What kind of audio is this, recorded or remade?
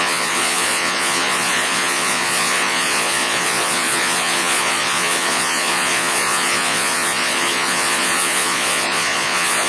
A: remade